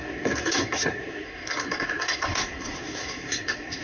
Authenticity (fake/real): fake